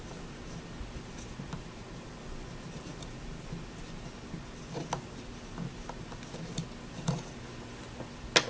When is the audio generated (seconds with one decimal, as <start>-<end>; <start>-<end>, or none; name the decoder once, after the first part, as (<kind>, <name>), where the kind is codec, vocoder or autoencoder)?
none